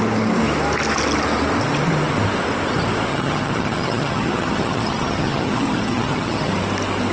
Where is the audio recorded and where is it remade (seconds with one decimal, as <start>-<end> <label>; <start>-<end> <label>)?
0.0-3.1 recorded; 3.1-6.5 remade; 6.5-7.1 recorded